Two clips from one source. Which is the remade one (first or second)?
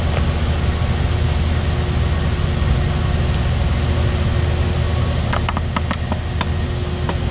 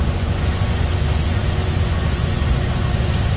second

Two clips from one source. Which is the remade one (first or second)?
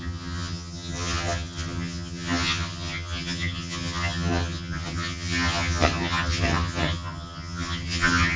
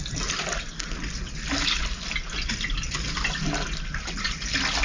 first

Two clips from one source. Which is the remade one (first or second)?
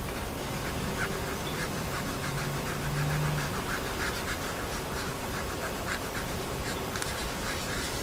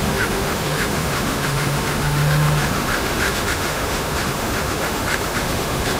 second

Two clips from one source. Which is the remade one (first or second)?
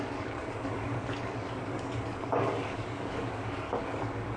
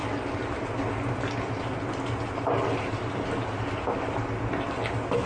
first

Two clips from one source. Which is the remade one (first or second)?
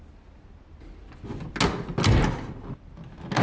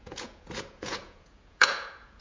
second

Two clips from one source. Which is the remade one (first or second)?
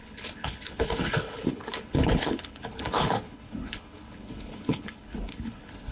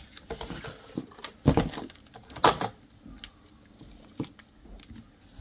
first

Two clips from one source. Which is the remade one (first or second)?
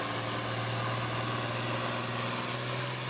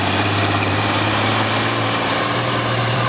second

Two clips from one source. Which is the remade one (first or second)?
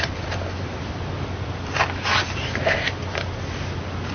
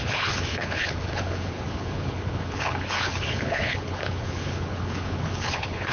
second